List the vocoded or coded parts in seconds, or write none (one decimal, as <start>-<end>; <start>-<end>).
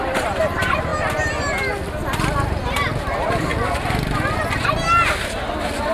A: 0.0-0.9; 3.0-3.5